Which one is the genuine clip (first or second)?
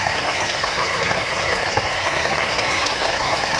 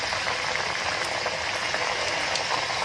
second